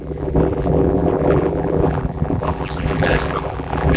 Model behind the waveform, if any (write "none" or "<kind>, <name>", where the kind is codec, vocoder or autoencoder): vocoder, BigVGAN v2